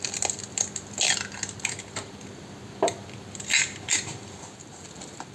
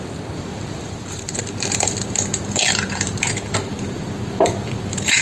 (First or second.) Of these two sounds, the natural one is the first